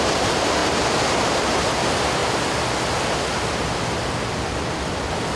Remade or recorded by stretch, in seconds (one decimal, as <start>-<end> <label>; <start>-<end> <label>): 0.0-5.4 recorded